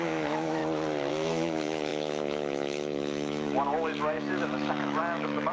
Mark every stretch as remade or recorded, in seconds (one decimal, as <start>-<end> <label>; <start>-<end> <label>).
0.0-0.6 remade; 0.6-1.1 recorded; 1.1-5.5 remade